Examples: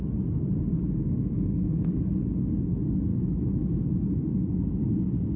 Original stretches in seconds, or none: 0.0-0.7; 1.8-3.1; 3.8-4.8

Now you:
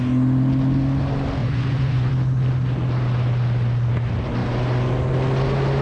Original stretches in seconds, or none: 0.0-1.4; 2.1-5.8